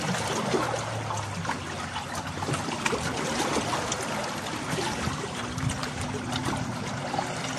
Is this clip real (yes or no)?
yes